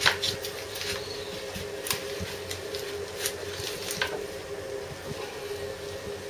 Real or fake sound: real